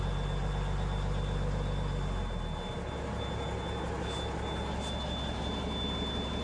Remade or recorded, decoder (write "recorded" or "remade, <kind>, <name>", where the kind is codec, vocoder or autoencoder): recorded